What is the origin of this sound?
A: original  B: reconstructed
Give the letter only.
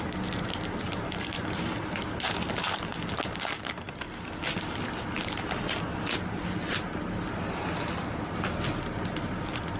A